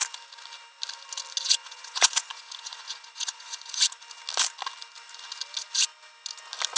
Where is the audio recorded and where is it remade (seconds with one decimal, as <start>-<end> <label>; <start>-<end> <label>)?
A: 0.0-1.6 recorded; 1.6-3.8 remade; 3.8-6.8 recorded